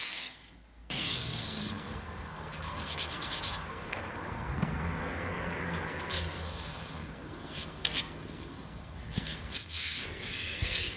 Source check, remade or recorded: remade